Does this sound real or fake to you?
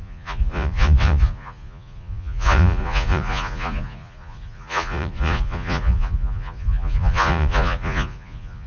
fake